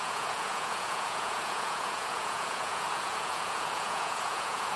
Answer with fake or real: fake